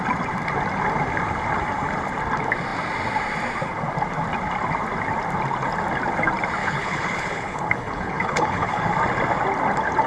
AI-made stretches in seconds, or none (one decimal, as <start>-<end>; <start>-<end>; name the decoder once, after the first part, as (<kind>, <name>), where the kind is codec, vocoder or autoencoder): 6.6-8.8 (codec, HILCodec)